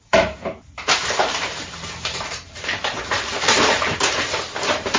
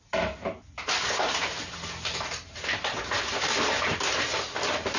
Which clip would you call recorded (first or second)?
second